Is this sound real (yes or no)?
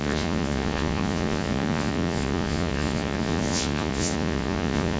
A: no